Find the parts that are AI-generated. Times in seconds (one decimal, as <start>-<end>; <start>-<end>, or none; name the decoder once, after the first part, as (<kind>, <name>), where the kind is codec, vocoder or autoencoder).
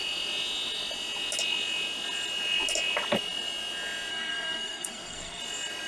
4.1-5.4 (codec, SNAC)